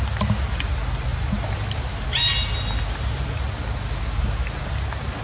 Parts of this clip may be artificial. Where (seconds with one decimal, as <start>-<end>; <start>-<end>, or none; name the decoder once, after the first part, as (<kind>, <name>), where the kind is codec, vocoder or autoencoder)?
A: none